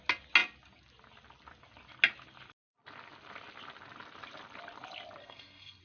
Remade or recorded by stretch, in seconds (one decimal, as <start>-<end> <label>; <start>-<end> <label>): 0.0-5.2 recorded; 5.2-5.8 remade